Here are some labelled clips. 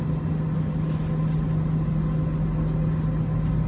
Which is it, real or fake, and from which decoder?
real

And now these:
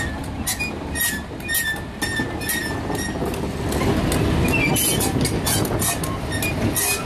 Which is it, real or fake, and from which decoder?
real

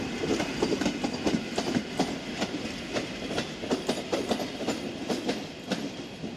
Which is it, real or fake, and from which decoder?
real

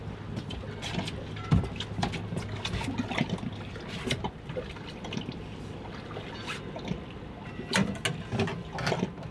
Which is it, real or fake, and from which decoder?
real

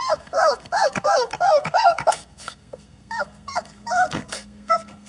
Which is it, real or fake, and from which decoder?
fake, codec, SNAC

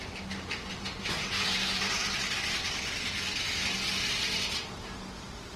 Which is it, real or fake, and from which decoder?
fake, vocoder, BigVGAN v2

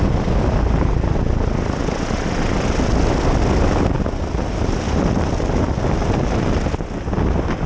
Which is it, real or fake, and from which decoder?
real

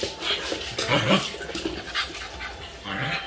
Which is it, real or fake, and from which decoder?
real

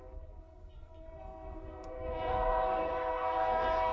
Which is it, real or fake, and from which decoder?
fake, codec, SNAC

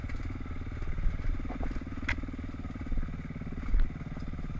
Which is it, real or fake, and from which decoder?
real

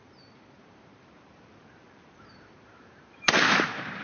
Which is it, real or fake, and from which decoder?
fake, vocoder, BigVGAN v2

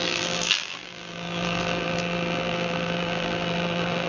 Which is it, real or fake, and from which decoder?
fake, vocoder, BigVGAN v2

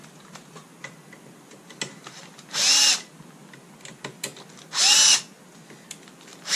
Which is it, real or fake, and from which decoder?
real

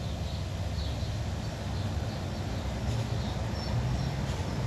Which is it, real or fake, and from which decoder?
real